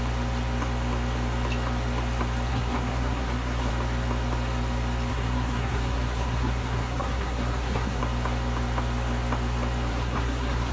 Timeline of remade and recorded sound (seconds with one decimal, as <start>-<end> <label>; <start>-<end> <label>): 0.0-2.5 recorded; 2.5-3.7 remade; 3.7-5.1 recorded; 5.1-8.0 remade; 8.0-9.9 recorded; 9.9-10.7 remade